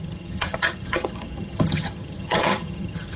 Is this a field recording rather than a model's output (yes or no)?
no